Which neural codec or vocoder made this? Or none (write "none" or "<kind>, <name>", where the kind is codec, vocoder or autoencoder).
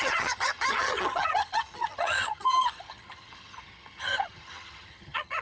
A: vocoder, HiFi-GAN